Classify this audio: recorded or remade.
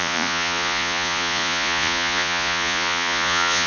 remade